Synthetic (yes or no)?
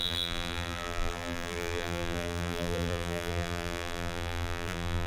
yes